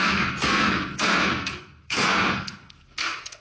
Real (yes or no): no